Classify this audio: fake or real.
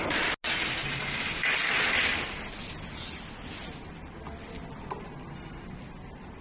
real